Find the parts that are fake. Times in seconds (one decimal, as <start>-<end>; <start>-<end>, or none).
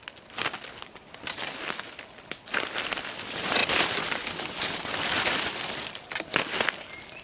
none